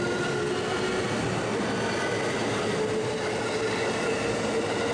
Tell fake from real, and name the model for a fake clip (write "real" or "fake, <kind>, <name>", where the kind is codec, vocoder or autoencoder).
real